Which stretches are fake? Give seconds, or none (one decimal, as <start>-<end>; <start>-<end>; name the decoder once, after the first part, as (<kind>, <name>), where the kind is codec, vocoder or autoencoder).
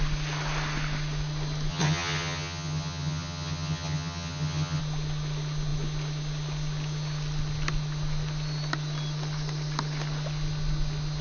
1.7-4.8 (vocoder, HiFi-GAN)